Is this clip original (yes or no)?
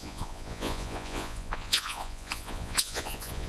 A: no